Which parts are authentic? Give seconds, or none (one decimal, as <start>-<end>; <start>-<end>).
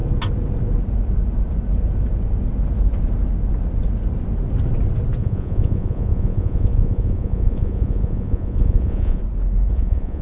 0.0-5.2; 9.2-9.7